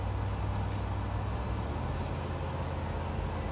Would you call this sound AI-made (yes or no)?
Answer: no